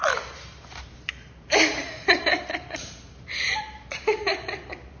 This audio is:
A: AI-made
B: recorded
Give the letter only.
A